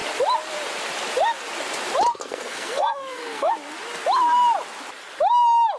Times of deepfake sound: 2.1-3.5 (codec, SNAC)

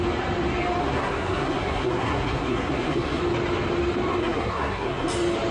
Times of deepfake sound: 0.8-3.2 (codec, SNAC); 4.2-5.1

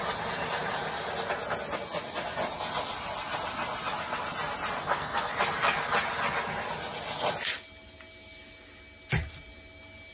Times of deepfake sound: 4.8-5.3 (codec, SNAC)

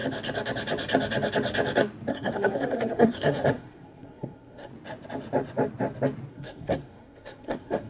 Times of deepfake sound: 2.1-4.7 (codec, SNAC); 6.3-7.9